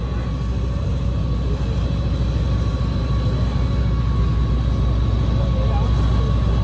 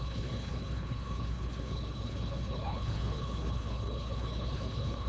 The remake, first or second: second